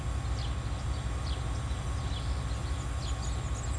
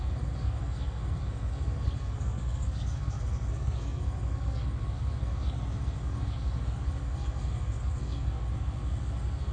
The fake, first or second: second